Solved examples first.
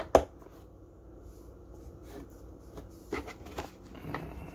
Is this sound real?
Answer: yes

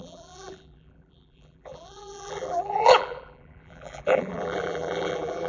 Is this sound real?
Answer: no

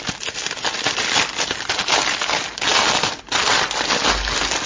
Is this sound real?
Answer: yes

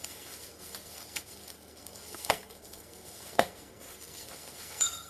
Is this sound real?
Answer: no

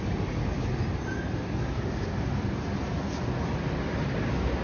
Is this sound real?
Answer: yes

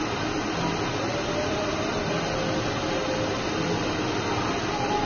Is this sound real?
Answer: yes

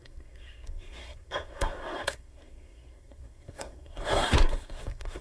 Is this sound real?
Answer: no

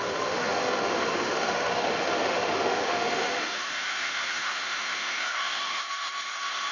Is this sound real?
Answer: no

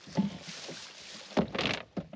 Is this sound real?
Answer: yes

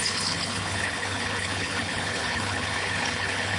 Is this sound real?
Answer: no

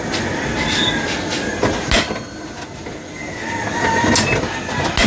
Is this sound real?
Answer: yes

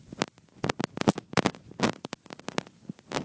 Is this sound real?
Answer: yes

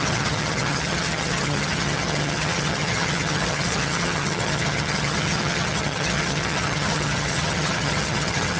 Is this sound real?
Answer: no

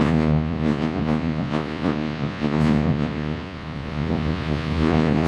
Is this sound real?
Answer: no